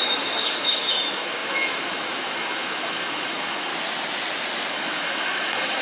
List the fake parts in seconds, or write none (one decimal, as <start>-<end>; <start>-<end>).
0.0-3.7; 4.7-5.8